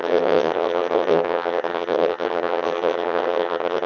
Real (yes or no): no